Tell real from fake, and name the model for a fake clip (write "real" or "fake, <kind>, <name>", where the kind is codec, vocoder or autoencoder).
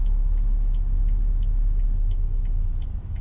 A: real